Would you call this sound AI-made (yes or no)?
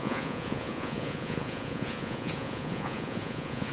yes